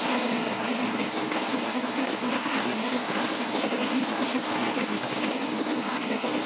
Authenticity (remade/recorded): remade